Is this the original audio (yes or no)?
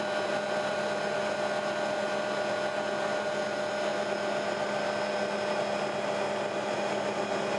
yes